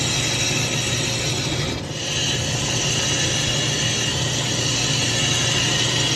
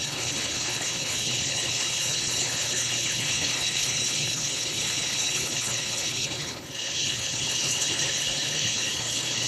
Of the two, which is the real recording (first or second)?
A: first